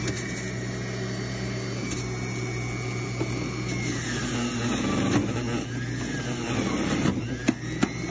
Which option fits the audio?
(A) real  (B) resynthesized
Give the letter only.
A